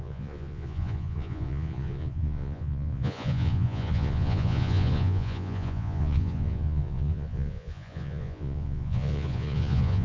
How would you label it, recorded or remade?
remade